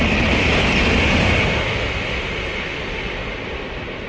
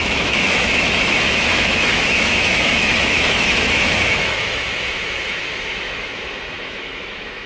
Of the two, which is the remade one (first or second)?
second